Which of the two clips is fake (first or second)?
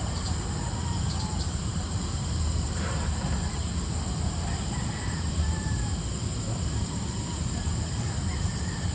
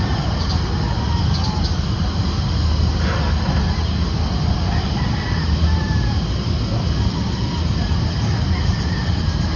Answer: first